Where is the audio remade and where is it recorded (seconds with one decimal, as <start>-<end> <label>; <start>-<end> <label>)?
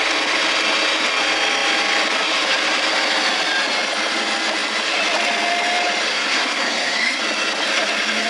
0.0-6.1 recorded; 6.1-7.2 remade; 7.2-8.3 recorded